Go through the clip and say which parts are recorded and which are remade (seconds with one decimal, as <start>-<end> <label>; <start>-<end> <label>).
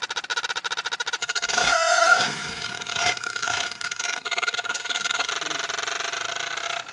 0.0-1.2 recorded; 1.2-5.3 remade; 5.3-6.9 recorded